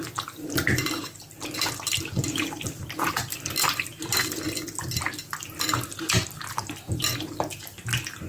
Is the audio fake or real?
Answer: real